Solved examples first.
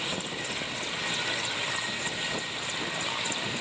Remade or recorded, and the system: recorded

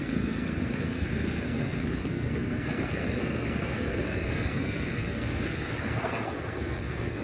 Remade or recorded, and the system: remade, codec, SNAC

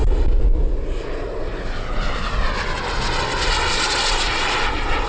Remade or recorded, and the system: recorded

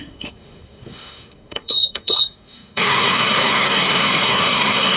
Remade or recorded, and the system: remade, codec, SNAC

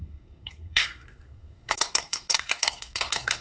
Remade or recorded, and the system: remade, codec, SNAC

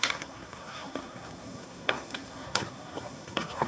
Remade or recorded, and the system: remade, codec, SNAC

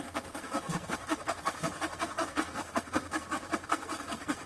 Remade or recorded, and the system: remade, codec, SNAC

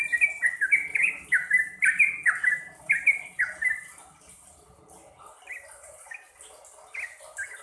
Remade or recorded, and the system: recorded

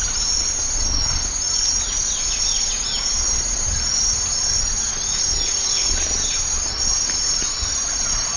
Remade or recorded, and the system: recorded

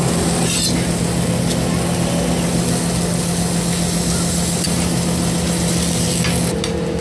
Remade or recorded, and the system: recorded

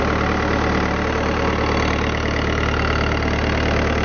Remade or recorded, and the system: recorded